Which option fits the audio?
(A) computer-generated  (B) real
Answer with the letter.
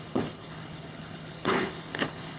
A